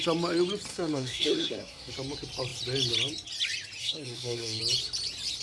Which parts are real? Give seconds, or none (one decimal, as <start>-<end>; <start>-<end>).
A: 0.0-0.7; 1.9-3.8; 4.6-5.4

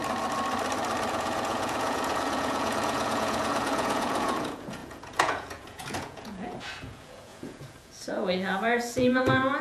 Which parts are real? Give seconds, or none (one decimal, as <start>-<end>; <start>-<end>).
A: 0.0-1.1